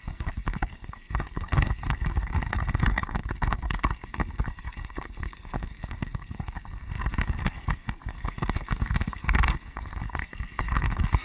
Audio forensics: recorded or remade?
remade